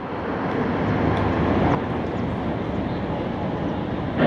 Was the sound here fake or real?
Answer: real